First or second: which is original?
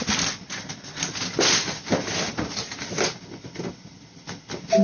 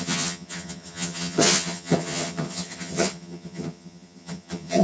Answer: first